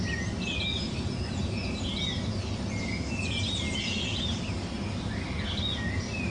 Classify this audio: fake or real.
real